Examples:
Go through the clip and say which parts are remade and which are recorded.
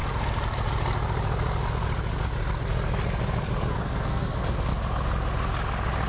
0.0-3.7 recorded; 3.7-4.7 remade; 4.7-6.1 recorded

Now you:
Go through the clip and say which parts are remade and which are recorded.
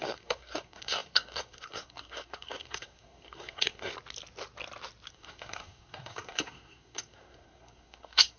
0.0-3.9 remade; 3.9-5.1 recorded; 5.1-8.4 remade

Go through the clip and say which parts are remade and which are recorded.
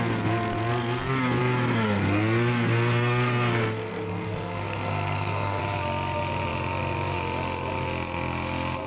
0.0-1.4 recorded; 1.4-5.6 remade; 5.6-8.9 recorded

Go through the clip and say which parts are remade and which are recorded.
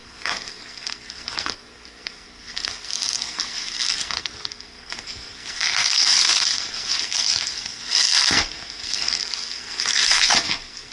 0.0-10.9 remade